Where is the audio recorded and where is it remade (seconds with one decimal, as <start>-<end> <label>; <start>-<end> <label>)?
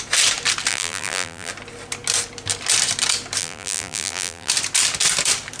0.0-0.7 recorded; 0.7-1.5 remade; 1.5-3.4 recorded; 3.4-4.5 remade; 4.5-5.6 recorded